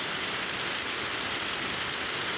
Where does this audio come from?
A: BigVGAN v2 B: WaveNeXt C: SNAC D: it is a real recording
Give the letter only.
D